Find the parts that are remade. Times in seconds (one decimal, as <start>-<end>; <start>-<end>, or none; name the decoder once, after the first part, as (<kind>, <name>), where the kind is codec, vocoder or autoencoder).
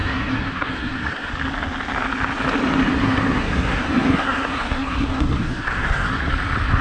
0.0-1.3 (codec, SNAC); 2.9-6.3